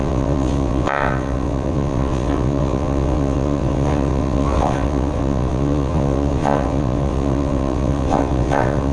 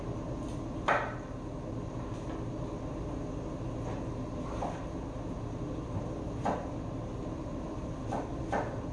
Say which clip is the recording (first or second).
second